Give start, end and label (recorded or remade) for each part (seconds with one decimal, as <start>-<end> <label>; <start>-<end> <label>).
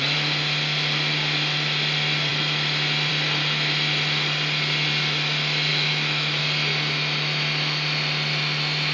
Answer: 0.0-5.7 recorded; 5.7-6.4 remade; 6.4-8.9 recorded